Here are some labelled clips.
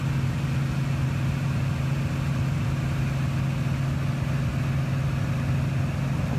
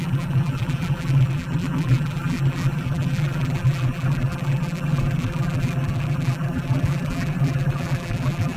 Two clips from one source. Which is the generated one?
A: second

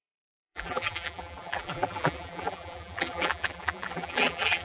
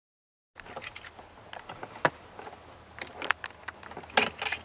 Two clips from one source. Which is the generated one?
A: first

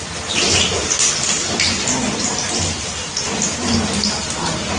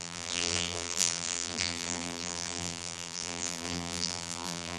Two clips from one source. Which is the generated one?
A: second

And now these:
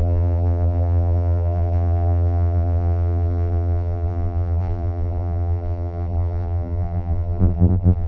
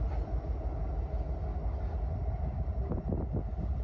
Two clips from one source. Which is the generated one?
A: first